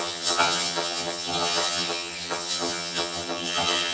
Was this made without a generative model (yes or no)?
no